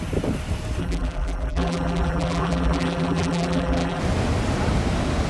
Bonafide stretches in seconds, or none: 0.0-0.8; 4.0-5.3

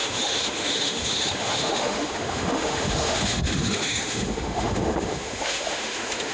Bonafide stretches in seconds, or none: none

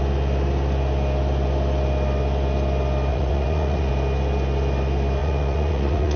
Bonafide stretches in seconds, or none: 0.0-3.1; 3.9-5.2

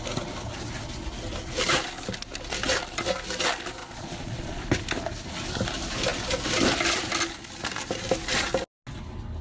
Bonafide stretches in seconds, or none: 0.0-3.8; 4.6-9.4

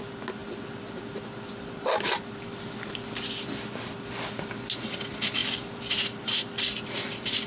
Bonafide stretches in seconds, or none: 0.0-7.5

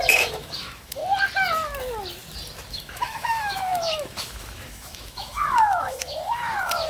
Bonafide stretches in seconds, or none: 1.0-2.7

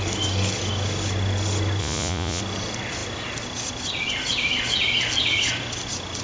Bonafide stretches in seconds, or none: 0.0-1.8; 2.4-6.2

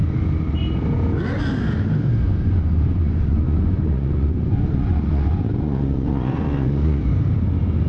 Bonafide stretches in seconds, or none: 0.0-2.3; 7.0-7.9